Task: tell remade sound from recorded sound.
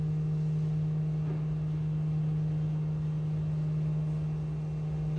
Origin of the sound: recorded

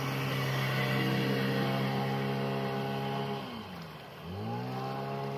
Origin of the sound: recorded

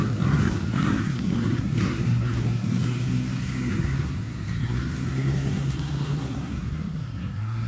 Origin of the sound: remade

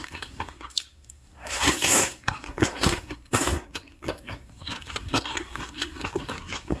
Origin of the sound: remade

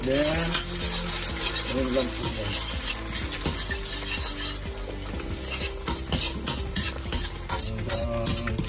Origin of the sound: recorded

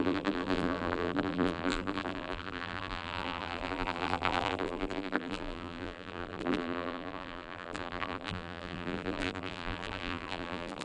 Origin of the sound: remade